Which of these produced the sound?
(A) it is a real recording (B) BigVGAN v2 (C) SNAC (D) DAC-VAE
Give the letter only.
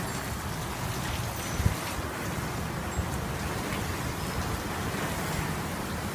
A